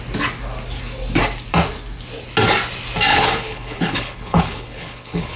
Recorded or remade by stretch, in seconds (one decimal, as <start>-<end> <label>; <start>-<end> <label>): 0.0-3.1 recorded; 3.1-5.4 remade